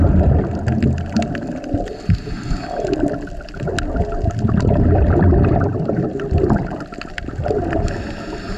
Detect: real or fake real